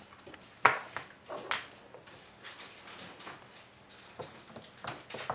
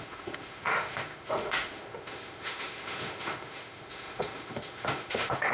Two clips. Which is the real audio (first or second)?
first